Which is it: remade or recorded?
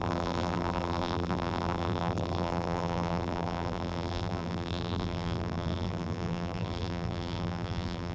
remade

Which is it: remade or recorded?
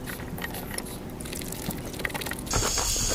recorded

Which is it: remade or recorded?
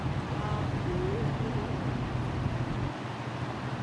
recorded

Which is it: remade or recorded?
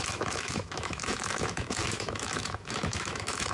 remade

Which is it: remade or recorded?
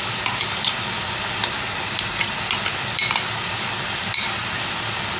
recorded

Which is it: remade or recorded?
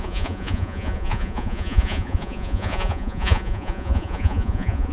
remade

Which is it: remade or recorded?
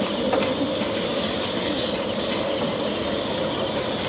recorded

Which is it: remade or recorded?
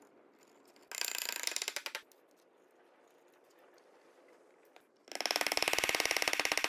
recorded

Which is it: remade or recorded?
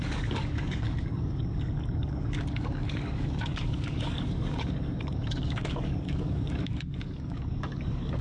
remade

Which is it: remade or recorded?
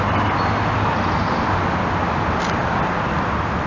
recorded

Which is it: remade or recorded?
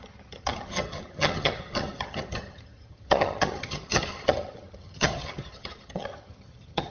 remade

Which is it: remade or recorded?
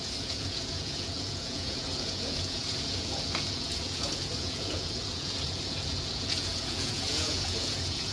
remade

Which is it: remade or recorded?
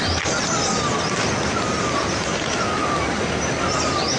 recorded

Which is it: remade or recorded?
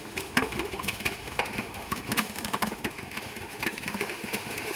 remade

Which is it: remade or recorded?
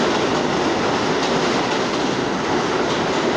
recorded